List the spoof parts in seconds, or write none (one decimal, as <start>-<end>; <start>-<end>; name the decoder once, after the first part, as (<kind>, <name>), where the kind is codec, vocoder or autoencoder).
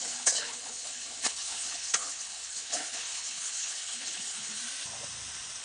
0.0-4.6 (codec, HILCodec)